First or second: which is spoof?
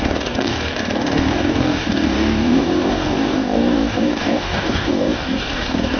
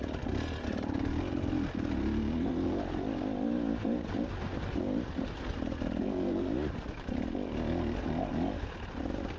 first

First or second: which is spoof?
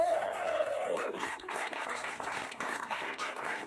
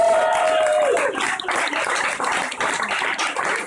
first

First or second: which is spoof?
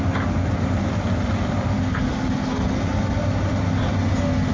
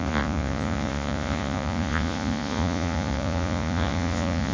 second